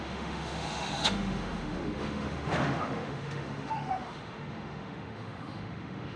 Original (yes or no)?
no